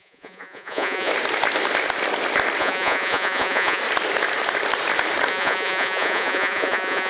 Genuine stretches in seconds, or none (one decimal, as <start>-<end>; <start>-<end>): 1.1-2.6; 3.8-5.3

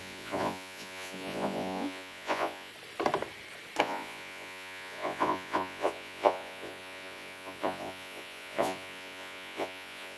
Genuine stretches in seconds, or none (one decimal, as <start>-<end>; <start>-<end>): 2.7-3.8

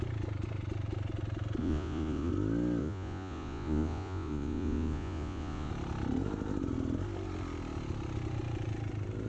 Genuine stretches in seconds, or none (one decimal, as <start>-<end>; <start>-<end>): 0.0-1.6; 2.3-2.8; 5.7-9.3

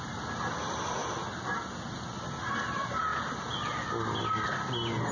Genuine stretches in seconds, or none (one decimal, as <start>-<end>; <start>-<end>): 0.0-5.1

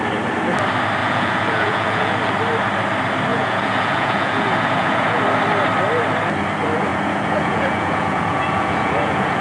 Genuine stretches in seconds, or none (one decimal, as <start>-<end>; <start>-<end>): 0.0-1.0; 2.1-3.3; 5.2-6.9

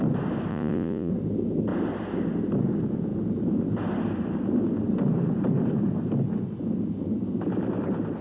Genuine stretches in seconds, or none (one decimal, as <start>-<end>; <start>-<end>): 0.0-0.5; 1.1-8.2

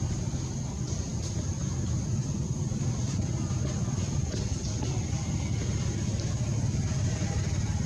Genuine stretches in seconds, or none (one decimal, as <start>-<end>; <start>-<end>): 0.0-7.9

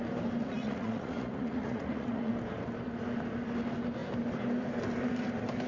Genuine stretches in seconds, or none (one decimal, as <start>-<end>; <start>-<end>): 0.0-0.4; 2.3-5.7